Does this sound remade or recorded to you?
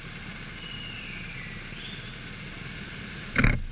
recorded